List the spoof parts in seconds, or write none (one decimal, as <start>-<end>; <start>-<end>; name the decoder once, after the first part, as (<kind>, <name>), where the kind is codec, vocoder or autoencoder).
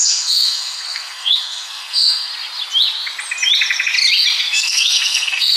0.0-2.3 (codec, SNAC); 4.4-5.6